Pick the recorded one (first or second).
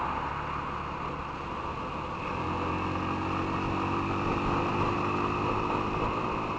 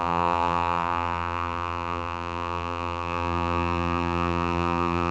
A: first